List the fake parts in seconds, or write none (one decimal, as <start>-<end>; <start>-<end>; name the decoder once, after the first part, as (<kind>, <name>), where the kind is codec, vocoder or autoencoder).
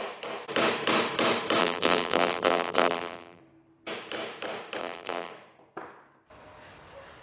1.6-3.4 (vocoder, BigVGAN v2); 4.8-5.3